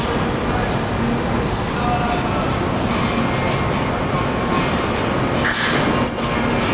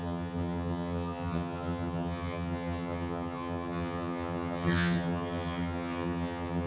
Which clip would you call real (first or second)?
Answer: first